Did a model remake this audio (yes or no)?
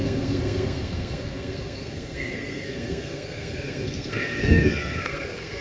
yes